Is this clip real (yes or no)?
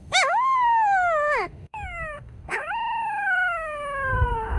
no